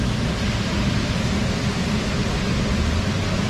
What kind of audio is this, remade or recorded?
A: recorded